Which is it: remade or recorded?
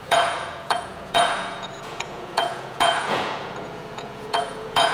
remade